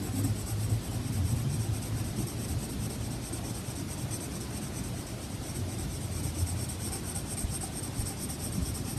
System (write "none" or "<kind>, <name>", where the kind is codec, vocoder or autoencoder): none